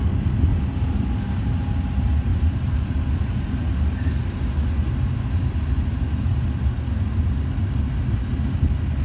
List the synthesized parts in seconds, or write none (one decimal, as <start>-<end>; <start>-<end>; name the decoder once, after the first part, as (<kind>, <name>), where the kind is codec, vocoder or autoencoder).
0.5-1.4 (vocoder, BigVGAN v2); 2.3-3.2